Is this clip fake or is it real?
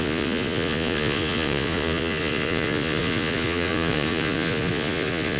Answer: fake